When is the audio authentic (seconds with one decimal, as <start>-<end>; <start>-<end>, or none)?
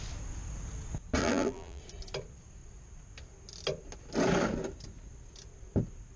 0.0-1.2; 1.8-6.2